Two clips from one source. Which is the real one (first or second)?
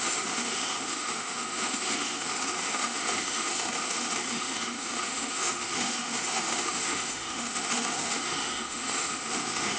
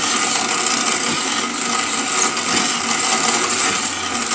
second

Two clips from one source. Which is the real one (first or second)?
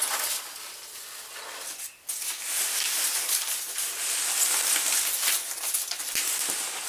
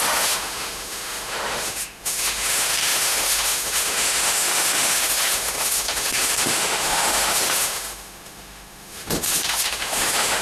first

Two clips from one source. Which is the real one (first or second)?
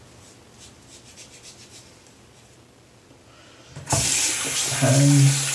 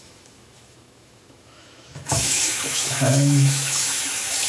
first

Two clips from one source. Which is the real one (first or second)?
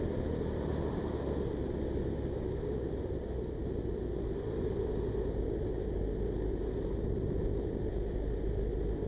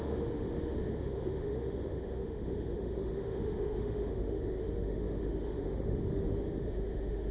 first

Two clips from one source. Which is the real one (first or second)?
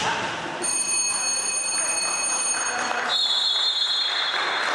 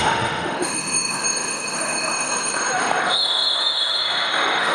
first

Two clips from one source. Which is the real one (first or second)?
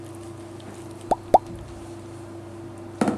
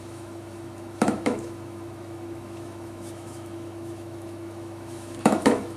first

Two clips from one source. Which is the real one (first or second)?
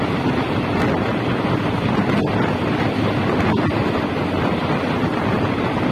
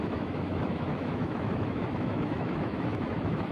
first